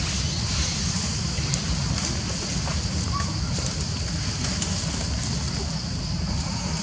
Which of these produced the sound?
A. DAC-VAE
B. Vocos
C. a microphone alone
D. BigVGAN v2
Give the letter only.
C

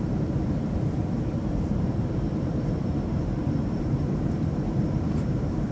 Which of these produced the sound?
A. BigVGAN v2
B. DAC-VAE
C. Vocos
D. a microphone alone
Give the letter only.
A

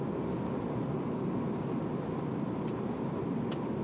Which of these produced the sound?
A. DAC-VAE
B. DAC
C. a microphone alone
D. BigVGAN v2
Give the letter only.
C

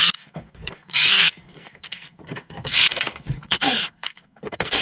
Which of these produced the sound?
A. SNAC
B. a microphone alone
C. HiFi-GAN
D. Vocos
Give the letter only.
A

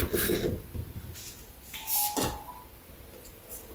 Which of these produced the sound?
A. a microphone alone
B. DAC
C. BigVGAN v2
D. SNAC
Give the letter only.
A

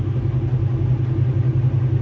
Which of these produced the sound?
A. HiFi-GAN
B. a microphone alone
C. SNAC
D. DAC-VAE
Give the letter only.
B